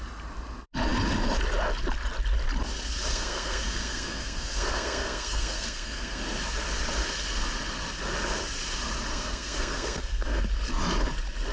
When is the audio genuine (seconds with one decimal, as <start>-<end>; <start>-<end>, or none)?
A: 0.0-3.1; 6.2-9.1; 10.4-11.5